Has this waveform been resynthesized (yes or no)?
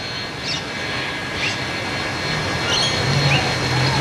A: no